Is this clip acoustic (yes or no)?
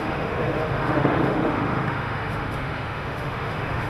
no